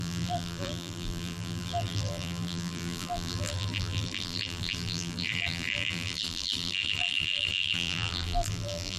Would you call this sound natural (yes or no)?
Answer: no